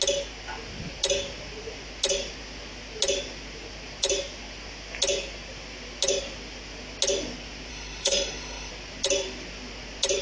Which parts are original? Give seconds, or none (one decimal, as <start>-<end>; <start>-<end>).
0.0-7.7; 8.7-10.2